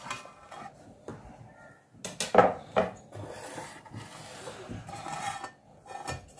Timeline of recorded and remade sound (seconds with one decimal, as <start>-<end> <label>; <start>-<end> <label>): 0.0-6.4 recorded